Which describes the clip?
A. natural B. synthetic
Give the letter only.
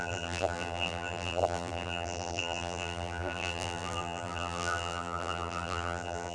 B